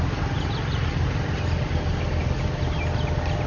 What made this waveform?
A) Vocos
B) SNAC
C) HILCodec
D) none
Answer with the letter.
D